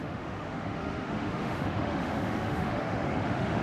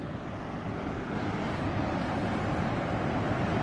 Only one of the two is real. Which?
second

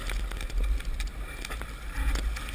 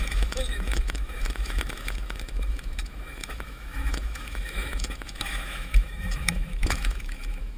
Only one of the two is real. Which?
first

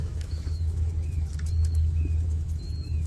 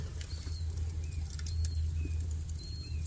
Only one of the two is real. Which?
second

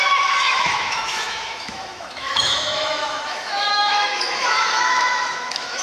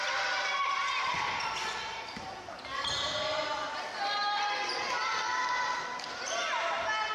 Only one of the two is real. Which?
second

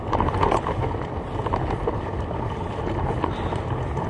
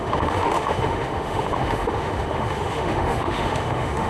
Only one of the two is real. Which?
first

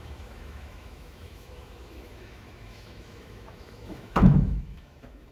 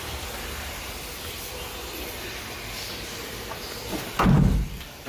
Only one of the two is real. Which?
second